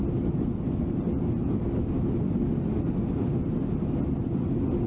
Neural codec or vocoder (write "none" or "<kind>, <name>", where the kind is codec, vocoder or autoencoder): none